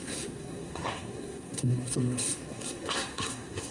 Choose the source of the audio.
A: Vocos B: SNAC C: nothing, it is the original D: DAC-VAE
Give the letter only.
B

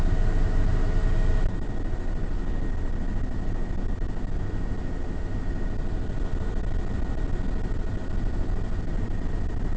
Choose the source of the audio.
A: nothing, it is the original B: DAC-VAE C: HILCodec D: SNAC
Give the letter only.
A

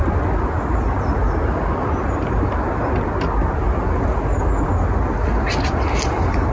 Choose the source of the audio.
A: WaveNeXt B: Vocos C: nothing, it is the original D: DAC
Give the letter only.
C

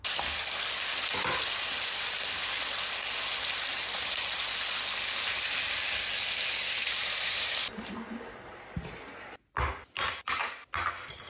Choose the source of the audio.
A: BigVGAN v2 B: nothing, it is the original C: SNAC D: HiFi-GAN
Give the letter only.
B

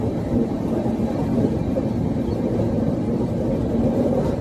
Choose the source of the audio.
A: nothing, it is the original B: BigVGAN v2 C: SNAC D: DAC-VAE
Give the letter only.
A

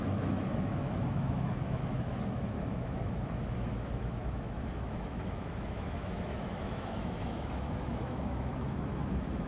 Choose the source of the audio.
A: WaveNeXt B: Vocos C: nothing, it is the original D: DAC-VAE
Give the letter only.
D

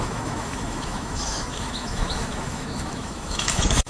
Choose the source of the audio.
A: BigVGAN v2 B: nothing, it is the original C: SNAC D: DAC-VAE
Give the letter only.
D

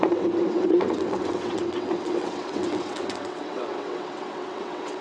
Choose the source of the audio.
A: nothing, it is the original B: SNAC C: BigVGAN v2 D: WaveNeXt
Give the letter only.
D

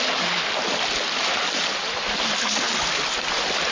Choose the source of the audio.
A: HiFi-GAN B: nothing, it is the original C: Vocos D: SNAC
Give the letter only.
B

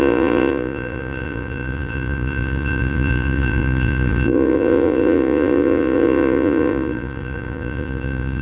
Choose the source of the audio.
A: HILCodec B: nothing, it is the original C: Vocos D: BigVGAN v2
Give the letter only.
C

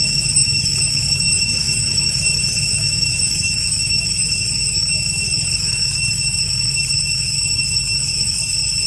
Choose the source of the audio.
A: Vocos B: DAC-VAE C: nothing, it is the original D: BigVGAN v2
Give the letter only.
B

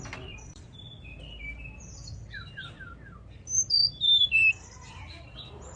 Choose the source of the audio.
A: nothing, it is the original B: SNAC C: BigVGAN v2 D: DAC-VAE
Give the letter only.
C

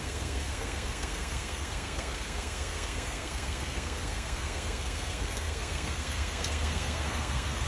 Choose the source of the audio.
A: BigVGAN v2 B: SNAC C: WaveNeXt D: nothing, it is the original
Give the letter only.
B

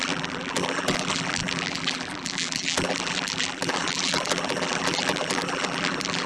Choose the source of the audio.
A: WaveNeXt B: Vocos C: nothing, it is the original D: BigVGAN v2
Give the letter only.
D